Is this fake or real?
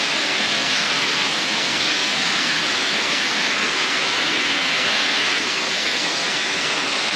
fake